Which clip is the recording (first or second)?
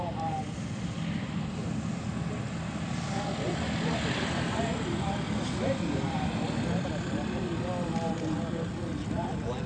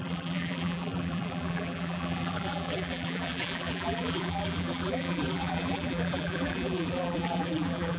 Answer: first